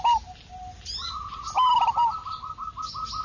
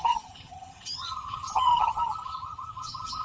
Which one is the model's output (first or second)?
second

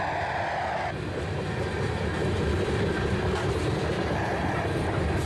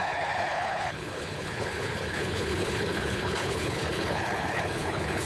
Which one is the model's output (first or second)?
second